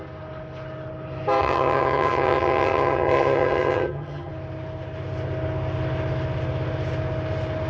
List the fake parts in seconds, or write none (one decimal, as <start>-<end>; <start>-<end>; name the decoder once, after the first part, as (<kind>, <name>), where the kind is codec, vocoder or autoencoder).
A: 1.4-4.3 (vocoder, HiFi-GAN)